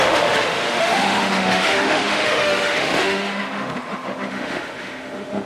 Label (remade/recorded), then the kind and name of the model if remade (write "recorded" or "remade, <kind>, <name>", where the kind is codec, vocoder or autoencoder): remade, autoencoder, DAC-VAE